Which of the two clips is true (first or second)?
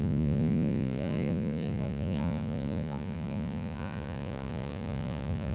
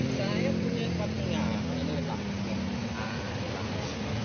second